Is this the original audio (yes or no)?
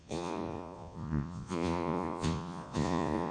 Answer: no